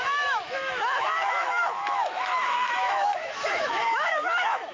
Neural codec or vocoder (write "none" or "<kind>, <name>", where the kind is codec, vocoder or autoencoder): autoencoder, DAC-VAE